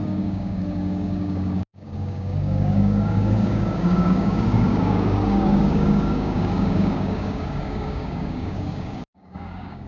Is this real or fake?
fake